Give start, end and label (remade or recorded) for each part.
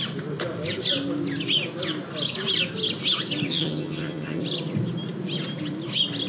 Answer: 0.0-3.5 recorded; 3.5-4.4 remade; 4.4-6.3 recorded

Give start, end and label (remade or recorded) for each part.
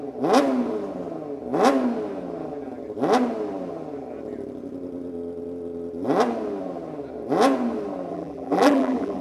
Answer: 0.0-8.1 recorded; 8.1-9.2 remade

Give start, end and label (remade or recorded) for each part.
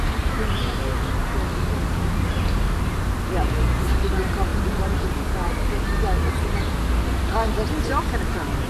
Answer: 0.0-8.7 recorded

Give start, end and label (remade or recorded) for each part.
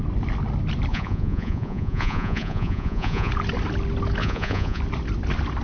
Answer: 0.0-0.9 recorded; 0.9-3.3 remade; 3.3-4.2 recorded; 4.2-4.8 remade; 4.8-5.6 recorded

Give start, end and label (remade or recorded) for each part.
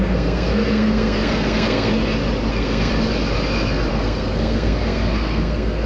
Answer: 0.0-1.9 remade; 1.9-2.5 recorded; 2.5-2.9 remade; 2.9-3.9 recorded; 3.9-5.9 remade